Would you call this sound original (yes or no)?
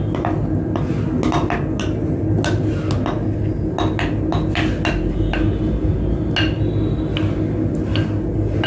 yes